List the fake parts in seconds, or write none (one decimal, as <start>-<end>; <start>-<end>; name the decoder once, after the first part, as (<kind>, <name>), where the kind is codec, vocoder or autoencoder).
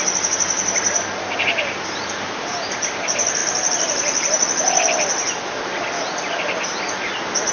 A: none